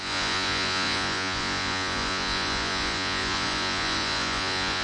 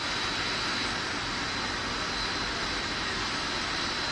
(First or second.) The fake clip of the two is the first